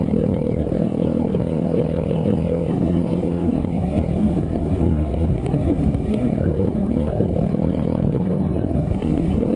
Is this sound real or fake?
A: fake